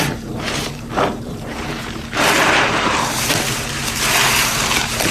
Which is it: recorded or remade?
remade